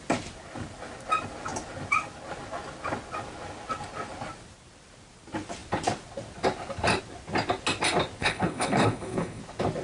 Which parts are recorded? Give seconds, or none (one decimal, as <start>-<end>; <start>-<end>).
0.0-8.2; 9.4-9.8